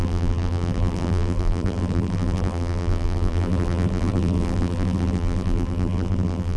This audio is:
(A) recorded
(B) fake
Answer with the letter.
B